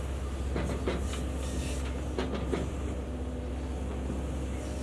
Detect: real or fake real